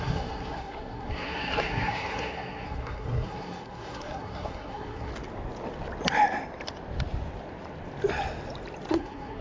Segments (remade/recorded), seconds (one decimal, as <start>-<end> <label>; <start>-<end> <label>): 0.0-5.1 remade; 5.1-8.9 recorded; 8.9-9.4 remade